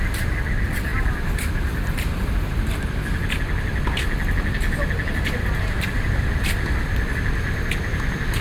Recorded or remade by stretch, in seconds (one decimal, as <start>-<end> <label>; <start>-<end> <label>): 0.0-8.4 recorded